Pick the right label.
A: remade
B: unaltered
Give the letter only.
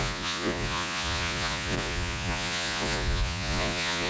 A